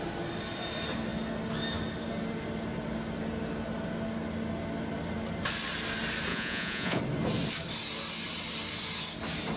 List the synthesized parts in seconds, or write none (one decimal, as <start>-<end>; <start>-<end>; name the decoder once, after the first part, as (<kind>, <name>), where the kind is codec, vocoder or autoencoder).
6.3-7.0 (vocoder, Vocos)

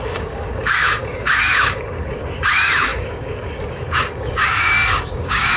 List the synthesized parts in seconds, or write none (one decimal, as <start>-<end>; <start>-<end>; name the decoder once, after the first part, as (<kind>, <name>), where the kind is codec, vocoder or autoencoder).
0.0-5.6 (codec, DAC)

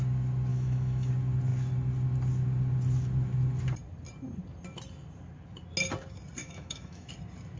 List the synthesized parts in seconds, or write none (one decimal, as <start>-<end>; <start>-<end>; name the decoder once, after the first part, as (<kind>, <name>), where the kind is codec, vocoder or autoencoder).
0.5-1.1 (autoencoder, DAC-VAE); 6.4-7.1

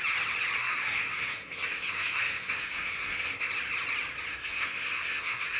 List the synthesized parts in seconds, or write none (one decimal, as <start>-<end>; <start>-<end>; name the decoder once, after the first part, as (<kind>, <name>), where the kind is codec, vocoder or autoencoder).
0.6-3.5 (codec, SNAC); 4.3-5.6

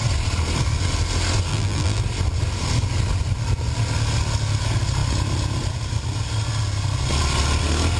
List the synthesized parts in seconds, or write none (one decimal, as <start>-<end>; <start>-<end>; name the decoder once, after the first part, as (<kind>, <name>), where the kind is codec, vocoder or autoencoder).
1.5-2.0 (vocoder, BigVGAN v2)